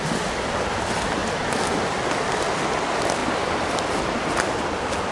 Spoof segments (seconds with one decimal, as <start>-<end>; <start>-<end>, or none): none